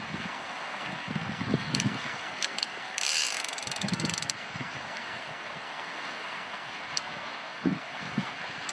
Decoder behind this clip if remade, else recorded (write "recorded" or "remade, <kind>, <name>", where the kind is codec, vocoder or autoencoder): remade, codec, SNAC